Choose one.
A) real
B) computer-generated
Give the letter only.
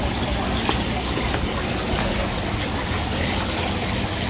A